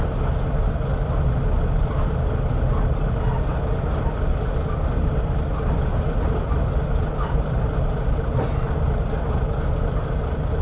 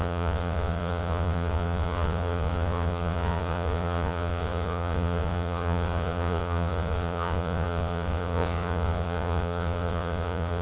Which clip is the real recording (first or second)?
first